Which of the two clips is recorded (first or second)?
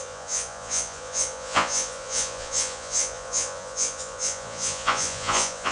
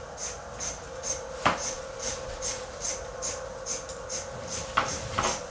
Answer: second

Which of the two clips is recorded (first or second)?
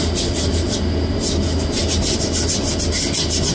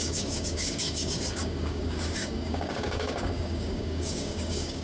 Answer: first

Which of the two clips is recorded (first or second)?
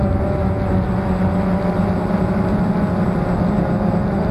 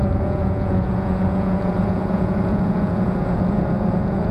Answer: first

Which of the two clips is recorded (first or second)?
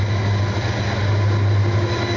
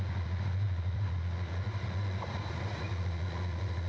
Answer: first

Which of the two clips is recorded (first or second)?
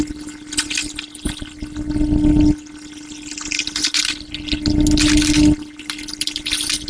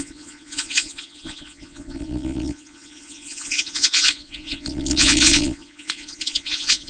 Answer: first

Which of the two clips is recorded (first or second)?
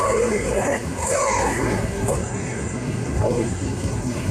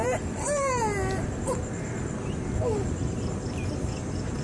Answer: second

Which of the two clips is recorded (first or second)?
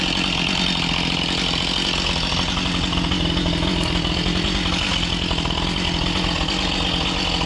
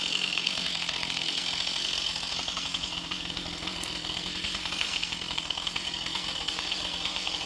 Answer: first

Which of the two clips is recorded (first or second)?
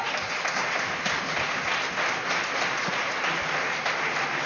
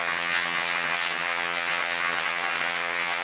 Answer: first